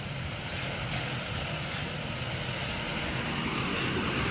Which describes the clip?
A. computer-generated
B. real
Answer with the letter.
B